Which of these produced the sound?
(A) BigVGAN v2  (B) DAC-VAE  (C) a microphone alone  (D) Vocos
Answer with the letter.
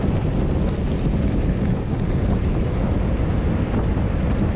C